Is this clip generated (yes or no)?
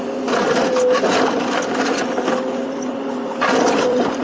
no